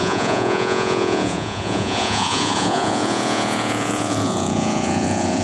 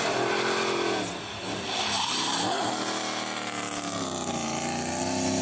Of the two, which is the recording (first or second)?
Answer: second